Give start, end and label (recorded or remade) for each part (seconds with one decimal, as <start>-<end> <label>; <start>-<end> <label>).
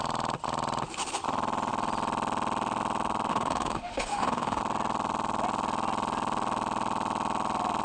0.0-3.3 recorded; 3.3-4.6 remade; 4.6-7.8 recorded